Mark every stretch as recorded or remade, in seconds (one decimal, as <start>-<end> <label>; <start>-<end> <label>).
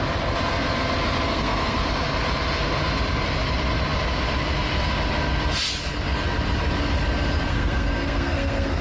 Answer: 0.0-1.3 recorded; 1.3-1.8 remade; 1.8-7.5 recorded; 7.5-8.8 remade